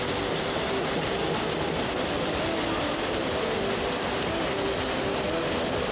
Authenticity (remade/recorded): recorded